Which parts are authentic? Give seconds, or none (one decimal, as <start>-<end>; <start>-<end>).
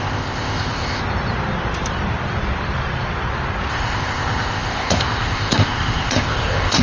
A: 1.0-3.7